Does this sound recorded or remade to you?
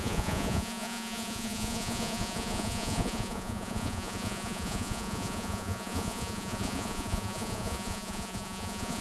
remade